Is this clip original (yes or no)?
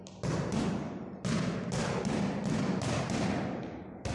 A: yes